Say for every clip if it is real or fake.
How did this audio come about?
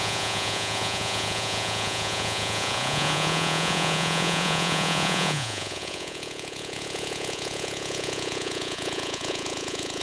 fake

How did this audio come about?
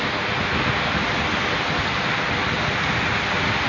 real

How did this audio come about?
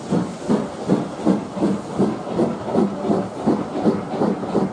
real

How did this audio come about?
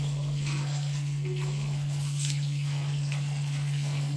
fake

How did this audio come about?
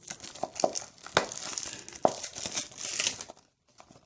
real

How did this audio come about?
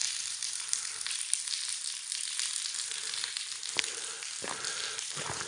real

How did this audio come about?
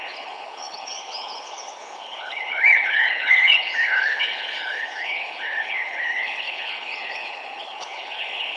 fake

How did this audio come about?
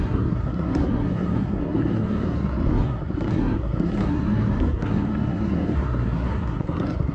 fake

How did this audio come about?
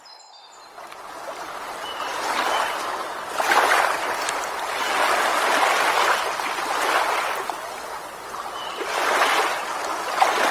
real